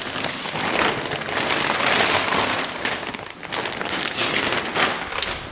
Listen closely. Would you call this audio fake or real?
real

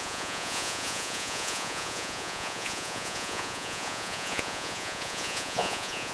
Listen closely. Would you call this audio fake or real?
fake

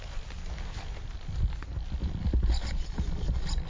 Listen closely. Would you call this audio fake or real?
real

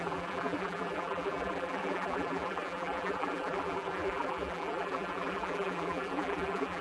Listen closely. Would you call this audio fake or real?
fake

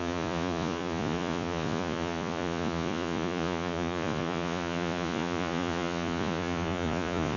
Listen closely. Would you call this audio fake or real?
fake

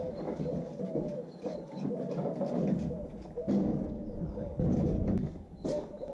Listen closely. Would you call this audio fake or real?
fake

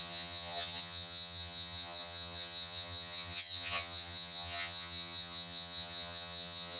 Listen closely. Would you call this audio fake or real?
fake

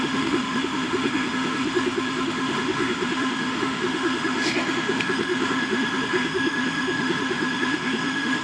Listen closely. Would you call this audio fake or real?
fake